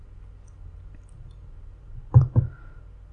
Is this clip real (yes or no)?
yes